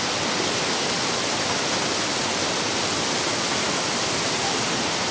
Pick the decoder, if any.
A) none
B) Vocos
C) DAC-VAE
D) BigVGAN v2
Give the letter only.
A